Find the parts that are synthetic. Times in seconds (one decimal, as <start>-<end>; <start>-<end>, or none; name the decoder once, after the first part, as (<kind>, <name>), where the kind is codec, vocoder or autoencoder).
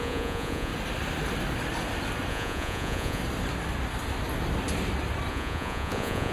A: 0.0-0.7 (vocoder, Vocos); 2.3-3.2; 5.3-6.3